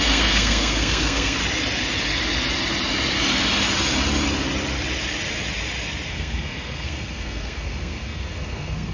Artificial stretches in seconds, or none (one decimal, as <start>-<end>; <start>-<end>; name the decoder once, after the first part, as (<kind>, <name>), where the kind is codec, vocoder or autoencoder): 0.0-1.4 (codec, SNAC); 6.1-8.9